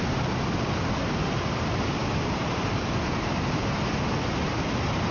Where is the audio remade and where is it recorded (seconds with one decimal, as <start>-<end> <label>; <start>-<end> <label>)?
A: 0.0-5.1 recorded